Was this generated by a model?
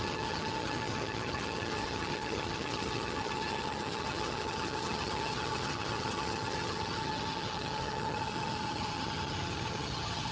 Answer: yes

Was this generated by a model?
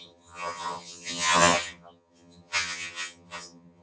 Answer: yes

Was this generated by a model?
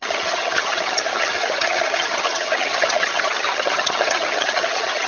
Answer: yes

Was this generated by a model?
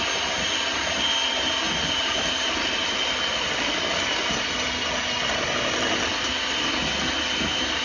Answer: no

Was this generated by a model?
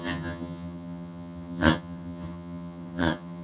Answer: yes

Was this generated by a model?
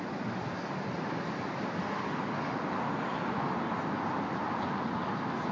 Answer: no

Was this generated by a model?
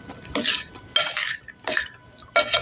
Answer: no